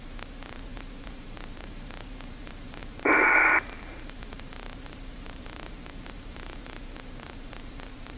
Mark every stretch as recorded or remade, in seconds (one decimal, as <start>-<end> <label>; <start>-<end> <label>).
0.0-8.2 remade